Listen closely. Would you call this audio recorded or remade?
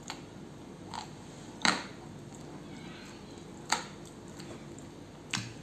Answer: recorded